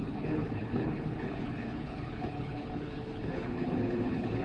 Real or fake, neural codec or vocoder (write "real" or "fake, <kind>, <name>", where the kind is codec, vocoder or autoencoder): fake, codec, HILCodec